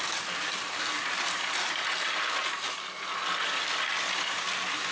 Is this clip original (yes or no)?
yes